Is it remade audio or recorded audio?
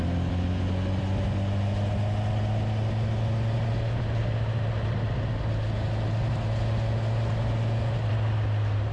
recorded